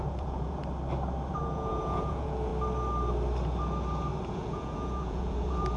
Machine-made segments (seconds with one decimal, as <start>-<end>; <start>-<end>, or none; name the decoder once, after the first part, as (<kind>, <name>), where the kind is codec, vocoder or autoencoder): 0.0-0.6 (vocoder, Vocos); 1.3-2.5; 4.3-5.8